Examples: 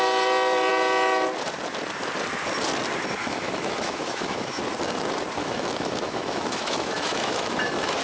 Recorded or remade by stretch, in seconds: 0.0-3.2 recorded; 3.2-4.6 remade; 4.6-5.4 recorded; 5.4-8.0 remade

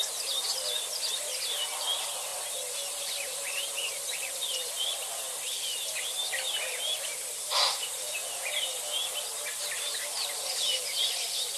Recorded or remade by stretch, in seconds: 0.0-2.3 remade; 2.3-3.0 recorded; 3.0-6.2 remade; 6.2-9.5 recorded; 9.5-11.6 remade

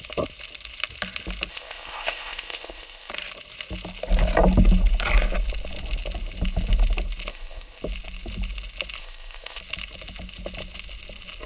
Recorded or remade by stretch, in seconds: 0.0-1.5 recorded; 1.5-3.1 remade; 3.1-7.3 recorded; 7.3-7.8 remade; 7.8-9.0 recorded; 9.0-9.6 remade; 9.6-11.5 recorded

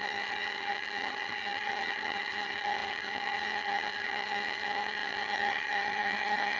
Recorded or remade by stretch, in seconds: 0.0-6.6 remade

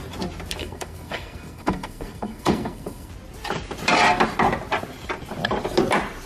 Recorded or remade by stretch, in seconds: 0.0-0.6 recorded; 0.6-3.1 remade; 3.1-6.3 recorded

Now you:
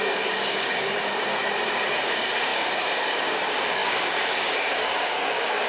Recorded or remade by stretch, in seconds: 0.0-1.3 remade; 1.3-2.0 recorded; 2.0-5.7 remade

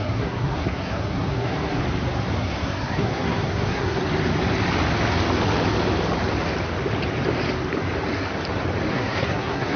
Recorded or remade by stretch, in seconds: 0.0-1.8 remade; 1.8-2.4 recorded; 2.4-4.0 remade; 4.0-8.9 recorded; 8.9-9.8 remade

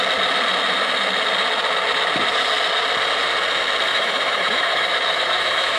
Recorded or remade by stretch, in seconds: 0.0-3.9 recorded; 3.9-5.8 remade